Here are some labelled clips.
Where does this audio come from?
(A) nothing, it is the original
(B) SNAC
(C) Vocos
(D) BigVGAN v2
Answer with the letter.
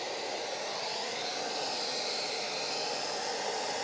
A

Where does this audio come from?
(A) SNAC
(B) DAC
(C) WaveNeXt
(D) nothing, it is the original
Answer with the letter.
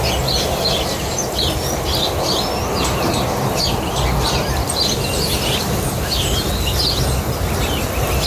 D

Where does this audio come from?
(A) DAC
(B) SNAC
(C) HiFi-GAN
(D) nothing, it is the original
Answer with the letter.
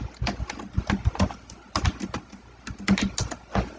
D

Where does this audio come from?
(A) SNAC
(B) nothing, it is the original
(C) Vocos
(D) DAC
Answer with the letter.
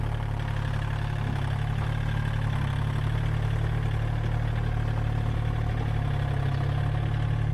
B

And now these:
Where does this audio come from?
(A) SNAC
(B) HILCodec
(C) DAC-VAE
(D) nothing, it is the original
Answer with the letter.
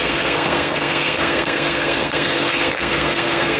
A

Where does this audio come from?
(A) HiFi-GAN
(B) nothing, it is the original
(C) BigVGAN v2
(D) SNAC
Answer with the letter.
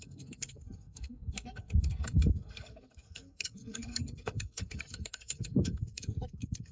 D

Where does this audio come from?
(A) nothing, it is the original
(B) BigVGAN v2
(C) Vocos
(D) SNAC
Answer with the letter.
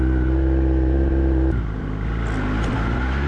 A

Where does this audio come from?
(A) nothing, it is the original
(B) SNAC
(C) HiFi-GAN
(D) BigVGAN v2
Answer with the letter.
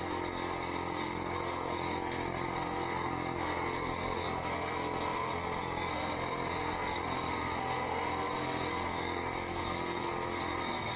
B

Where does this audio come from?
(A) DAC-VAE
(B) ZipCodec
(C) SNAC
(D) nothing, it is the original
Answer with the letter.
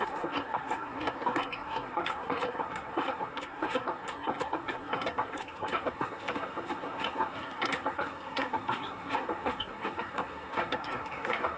C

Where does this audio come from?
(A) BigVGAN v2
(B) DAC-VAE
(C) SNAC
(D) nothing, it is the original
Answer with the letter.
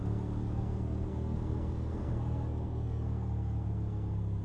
C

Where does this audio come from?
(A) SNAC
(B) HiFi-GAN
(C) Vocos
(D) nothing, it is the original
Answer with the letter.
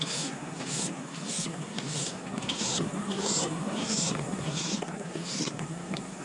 A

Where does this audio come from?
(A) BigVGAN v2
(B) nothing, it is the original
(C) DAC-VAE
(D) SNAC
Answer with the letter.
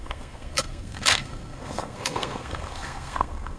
D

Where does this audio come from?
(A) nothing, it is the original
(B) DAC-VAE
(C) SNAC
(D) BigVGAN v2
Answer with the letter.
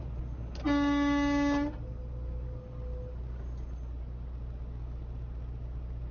A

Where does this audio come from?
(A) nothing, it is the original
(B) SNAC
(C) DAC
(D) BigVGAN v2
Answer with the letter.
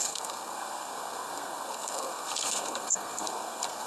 B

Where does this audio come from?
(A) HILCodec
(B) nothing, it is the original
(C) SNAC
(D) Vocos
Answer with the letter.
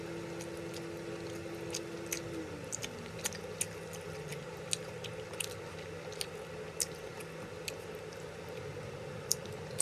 B